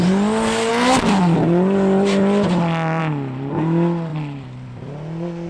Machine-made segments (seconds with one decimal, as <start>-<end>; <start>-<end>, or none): 4.1-4.9